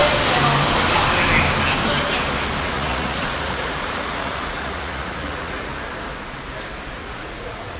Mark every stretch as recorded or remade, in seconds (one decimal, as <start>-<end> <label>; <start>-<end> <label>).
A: 0.0-2.6 recorded; 2.6-5.7 remade; 5.7-6.9 recorded; 6.9-7.8 remade